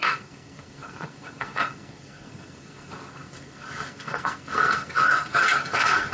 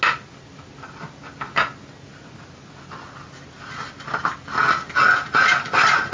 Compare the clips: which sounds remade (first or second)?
first